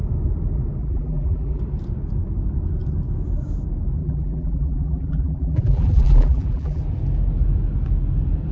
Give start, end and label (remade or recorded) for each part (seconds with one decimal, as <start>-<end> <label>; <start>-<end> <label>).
0.0-0.8 recorded; 0.8-1.6 remade; 1.6-4.0 recorded; 4.0-6.8 remade; 6.8-8.5 recorded